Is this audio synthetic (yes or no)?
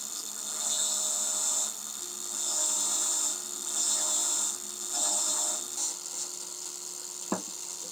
no